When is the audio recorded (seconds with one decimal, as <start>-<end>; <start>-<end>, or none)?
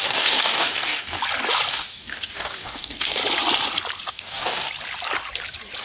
1.2-1.7; 3.2-4.1; 4.7-5.8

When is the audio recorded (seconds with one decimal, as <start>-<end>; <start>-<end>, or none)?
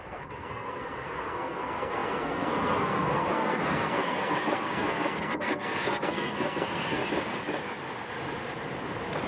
7.0-9.3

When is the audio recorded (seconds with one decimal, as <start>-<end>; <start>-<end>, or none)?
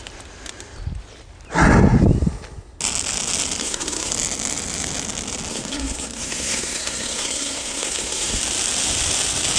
0.0-3.6; 4.1-5.5; 8.4-9.6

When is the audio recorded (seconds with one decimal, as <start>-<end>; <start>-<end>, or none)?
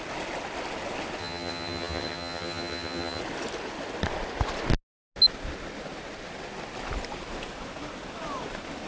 0.0-1.2; 3.2-8.9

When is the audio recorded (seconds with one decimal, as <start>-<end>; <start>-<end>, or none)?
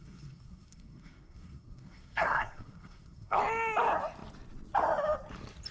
3.4-5.7